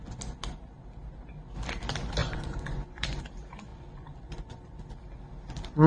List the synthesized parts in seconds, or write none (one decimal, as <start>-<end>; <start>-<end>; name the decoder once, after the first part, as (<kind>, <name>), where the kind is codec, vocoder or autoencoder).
2.2-3.2 (vocoder, Vocos); 3.7-4.8